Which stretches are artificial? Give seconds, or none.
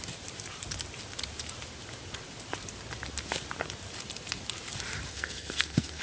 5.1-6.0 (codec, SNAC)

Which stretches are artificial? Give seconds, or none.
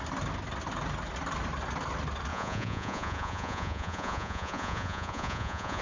2.3-5.8 (vocoder, Vocos)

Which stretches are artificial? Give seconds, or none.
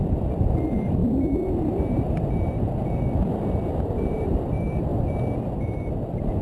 0.0-1.0 (vocoder, BigVGAN v2); 1.9-4.9; 5.5-6.4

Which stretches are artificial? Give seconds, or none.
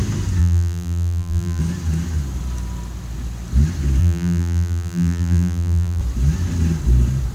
0.4-1.6 (vocoder, BigVGAN v2); 4.0-6.0